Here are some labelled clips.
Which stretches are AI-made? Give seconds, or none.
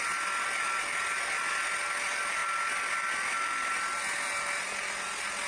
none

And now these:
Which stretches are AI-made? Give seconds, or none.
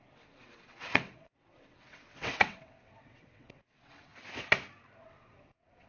0.0-4.1; 5.0-5.9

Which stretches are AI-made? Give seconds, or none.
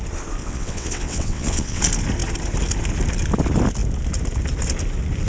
0.4-1.8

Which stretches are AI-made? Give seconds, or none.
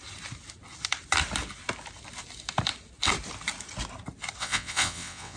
4.4-5.4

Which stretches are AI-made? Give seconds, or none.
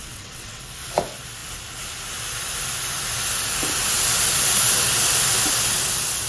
0.0-0.6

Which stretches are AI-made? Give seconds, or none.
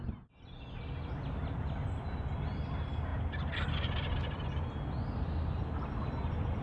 none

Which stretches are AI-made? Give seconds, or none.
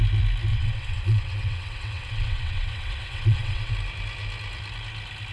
0.5-3.7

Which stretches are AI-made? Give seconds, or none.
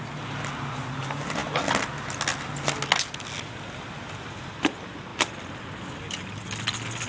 none